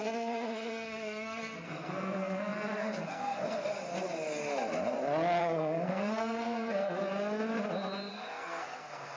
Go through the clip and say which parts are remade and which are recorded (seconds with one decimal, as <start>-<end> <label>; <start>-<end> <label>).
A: 0.0-3.8 remade; 3.8-5.4 recorded; 5.4-7.0 remade; 7.0-8.1 recorded; 8.1-9.2 remade